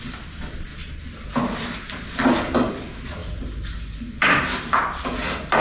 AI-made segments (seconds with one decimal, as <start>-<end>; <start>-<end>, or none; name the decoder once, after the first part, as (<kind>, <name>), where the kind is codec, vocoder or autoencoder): none